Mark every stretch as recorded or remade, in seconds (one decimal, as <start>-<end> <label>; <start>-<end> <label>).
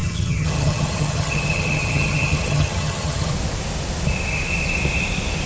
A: 0.0-3.3 remade; 3.3-5.5 recorded